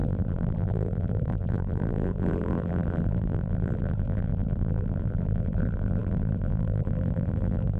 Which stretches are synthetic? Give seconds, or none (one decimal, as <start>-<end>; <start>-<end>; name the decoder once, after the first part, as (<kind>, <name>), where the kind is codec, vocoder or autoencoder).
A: 0.0-7.8 (vocoder, BigVGAN v2)